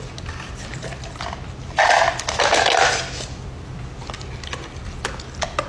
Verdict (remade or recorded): recorded